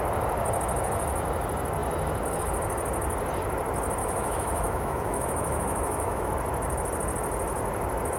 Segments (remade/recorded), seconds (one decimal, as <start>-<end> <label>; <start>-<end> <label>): 0.0-4.0 recorded; 4.0-6.3 remade; 6.3-8.2 recorded